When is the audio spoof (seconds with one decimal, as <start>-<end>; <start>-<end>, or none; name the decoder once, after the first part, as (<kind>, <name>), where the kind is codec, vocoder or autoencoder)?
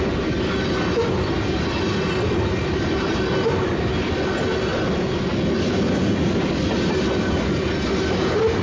none